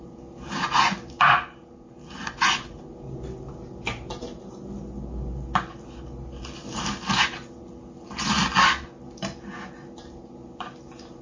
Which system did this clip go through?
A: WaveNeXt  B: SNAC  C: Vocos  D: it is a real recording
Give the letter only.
D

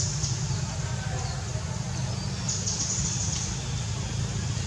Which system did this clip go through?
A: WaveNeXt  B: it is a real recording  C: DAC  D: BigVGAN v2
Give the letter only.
B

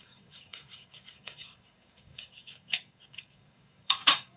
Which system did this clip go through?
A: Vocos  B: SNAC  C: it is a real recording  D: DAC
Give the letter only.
D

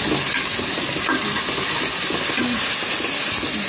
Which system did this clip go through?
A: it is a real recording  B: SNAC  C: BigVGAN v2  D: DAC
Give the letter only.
A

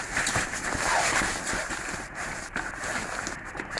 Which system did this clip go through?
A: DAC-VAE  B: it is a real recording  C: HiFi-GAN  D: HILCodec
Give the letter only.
B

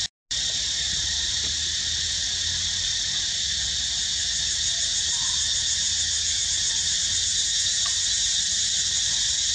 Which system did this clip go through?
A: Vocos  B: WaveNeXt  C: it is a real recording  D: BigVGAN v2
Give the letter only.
C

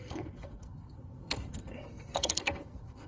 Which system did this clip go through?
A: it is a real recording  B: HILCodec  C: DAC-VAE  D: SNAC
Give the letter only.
D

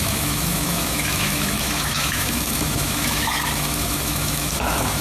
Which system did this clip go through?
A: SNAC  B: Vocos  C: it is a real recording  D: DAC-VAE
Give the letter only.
D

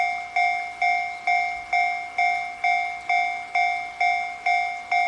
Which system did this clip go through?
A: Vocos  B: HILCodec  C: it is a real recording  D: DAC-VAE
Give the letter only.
C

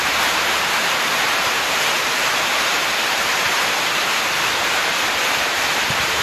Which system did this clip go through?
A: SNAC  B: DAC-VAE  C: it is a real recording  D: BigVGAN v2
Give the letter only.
D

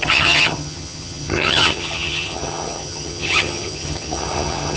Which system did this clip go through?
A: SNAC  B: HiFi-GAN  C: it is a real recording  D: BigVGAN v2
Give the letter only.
B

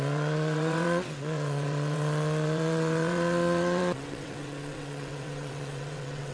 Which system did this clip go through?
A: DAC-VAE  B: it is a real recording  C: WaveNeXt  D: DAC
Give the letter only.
C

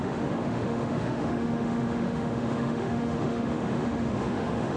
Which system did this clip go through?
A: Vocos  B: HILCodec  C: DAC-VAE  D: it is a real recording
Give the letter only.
C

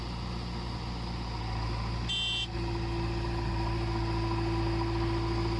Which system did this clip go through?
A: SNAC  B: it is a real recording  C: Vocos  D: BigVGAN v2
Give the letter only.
B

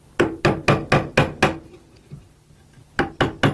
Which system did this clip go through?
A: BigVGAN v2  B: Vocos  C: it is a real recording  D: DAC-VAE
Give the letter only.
C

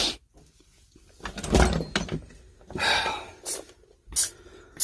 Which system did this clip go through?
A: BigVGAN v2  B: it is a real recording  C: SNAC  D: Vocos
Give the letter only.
B